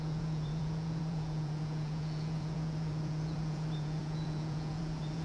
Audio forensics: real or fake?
fake